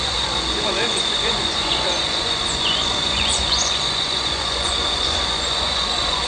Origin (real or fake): fake